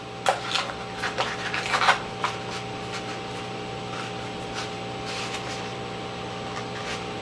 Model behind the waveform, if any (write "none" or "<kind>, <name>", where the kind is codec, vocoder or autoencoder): none